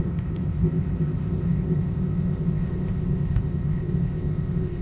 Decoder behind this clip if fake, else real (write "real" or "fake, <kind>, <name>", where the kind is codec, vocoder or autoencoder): fake, codec, ZipCodec